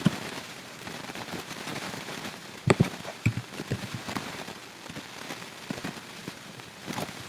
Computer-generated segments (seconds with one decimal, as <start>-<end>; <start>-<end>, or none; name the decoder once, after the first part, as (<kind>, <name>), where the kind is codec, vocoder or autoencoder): 0.0-4.6 (vocoder, BigVGAN v2); 5.6-7.3